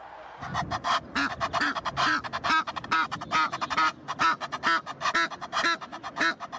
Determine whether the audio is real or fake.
real